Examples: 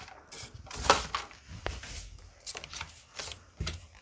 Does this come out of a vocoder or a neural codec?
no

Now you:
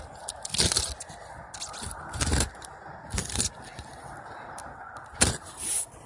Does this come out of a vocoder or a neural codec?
no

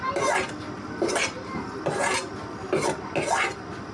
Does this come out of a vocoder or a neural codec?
no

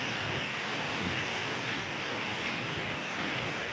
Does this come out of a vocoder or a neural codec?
yes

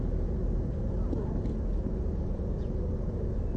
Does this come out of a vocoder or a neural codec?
no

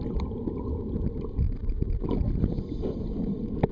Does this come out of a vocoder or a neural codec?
no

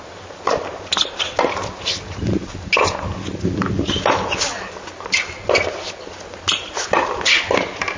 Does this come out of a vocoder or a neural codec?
no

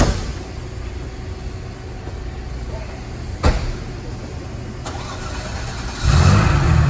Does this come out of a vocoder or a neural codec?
no